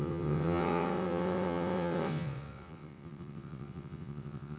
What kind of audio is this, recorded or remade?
remade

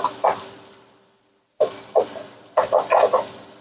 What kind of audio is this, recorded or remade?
recorded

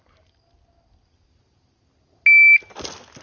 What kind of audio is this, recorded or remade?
recorded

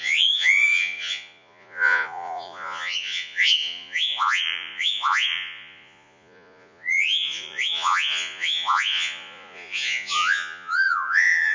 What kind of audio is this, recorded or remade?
remade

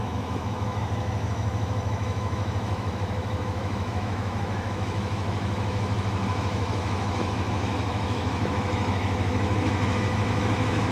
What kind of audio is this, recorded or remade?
remade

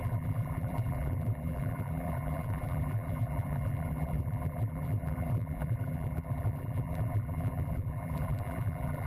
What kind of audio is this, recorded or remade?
remade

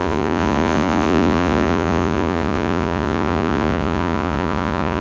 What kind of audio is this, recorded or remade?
remade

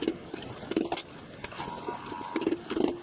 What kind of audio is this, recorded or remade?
recorded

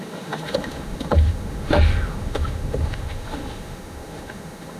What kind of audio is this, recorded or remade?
remade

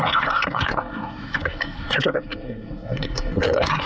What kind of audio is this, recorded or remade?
remade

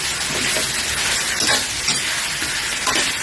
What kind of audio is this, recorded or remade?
recorded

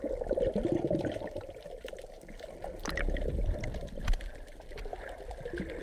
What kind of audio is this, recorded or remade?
recorded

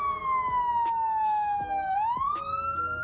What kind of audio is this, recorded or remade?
recorded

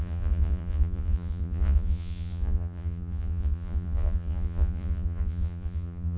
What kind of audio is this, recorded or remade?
remade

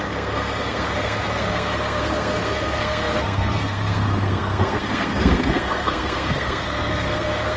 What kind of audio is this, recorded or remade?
remade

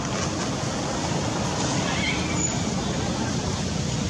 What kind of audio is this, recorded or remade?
recorded